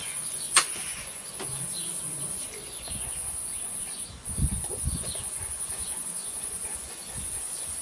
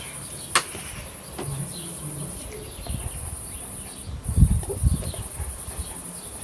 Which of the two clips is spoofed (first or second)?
first